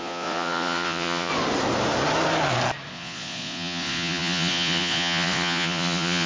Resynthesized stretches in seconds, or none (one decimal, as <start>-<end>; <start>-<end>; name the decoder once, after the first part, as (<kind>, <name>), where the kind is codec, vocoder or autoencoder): 0.0-1.3 (vocoder, Vocos); 2.9-6.3